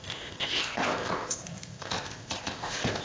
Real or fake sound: fake